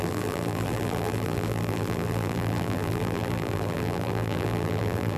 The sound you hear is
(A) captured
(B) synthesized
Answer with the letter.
B